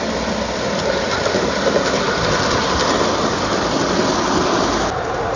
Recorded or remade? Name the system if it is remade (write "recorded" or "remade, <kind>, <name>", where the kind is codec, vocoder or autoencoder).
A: recorded